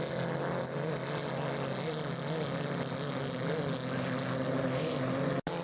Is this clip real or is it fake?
real